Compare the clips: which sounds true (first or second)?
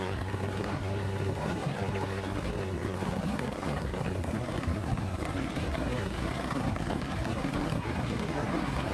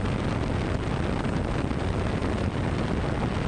second